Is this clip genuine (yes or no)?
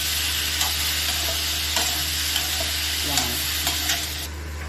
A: yes